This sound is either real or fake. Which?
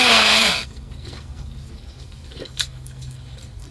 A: fake